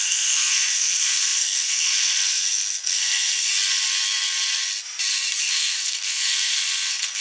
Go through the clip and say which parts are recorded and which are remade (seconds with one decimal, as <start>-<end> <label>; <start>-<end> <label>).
0.0-3.5 remade; 3.5-5.4 recorded; 5.4-7.2 remade